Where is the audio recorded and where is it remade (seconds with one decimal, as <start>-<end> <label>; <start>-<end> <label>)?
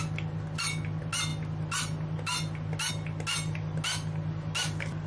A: 0.0-5.1 recorded